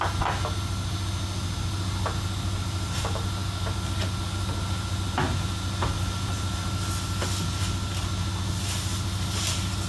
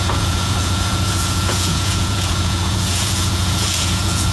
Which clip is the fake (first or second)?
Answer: second